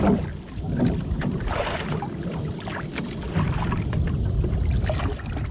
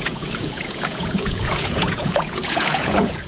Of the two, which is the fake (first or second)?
second